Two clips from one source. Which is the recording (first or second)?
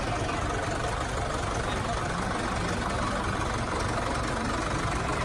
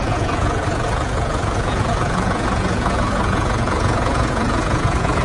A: first